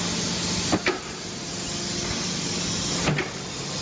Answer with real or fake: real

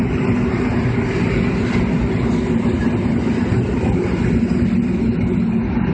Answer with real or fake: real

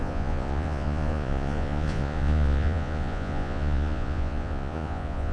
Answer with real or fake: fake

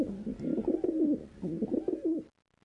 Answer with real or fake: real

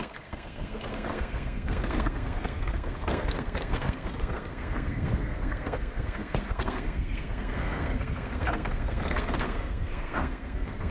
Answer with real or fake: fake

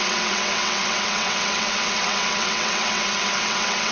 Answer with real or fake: fake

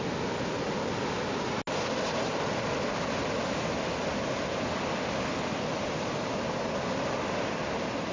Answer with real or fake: real